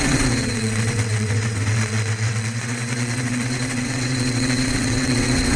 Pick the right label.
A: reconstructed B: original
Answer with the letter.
A